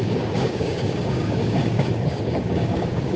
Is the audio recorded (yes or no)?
no